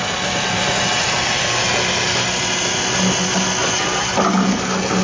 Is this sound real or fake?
real